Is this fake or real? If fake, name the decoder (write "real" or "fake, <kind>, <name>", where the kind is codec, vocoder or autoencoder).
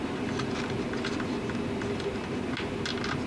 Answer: real